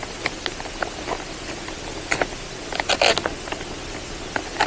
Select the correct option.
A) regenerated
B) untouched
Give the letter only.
B